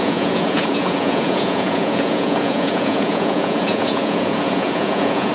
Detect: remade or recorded remade